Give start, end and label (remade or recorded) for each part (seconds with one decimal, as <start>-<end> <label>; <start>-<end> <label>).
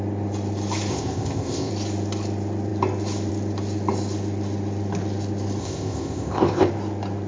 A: 0.0-0.9 recorded; 0.9-1.7 remade; 1.7-5.6 recorded; 5.6-6.7 remade; 6.7-7.3 recorded